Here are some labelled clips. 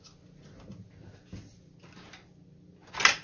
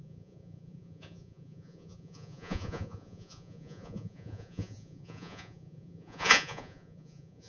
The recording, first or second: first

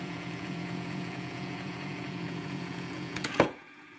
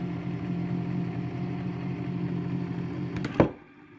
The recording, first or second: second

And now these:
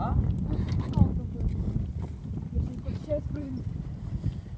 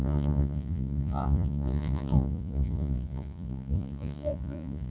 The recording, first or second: first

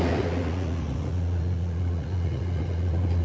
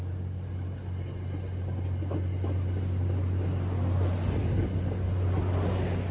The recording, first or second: second